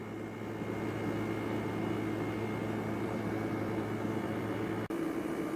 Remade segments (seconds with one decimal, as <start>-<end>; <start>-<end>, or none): 2.6-5.6